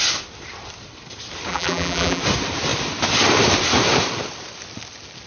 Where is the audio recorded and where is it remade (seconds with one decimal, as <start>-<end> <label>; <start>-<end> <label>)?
0.0-1.5 recorded; 1.5-2.2 remade; 2.2-5.3 recorded